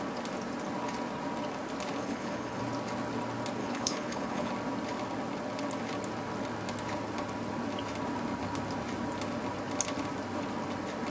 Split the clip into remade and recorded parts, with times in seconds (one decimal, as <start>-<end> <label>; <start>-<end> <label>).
0.0-2.0 recorded; 2.0-2.6 remade; 2.6-3.6 recorded; 3.6-4.5 remade; 4.5-11.1 recorded